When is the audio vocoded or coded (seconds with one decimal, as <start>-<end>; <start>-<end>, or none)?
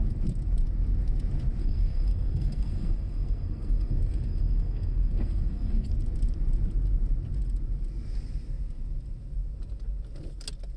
1.6-5.9